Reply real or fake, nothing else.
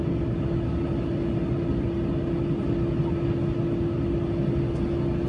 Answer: real